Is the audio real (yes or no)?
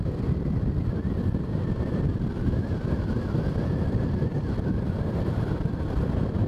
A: yes